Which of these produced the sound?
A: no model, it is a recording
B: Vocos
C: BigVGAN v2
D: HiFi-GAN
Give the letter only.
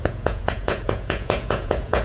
B